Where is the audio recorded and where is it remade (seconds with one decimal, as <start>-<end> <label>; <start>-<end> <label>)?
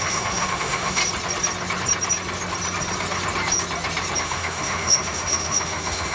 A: 0.0-1.0 remade; 1.0-4.2 recorded; 4.2-6.1 remade